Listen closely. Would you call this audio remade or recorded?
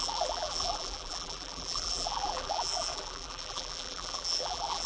remade